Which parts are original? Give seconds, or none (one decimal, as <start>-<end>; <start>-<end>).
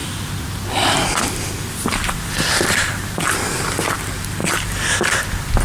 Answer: 0.0-5.6